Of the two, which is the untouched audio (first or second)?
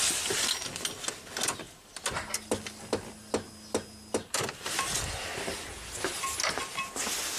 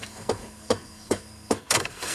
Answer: first